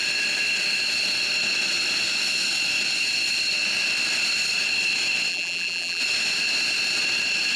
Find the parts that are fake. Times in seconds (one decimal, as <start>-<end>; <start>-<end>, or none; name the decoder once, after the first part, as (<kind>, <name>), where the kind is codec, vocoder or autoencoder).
5.3-6.0 (vocoder, BigVGAN v2)